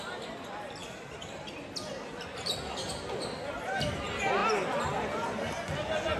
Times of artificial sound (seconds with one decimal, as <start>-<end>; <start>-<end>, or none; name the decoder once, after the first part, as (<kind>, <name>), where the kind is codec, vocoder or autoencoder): none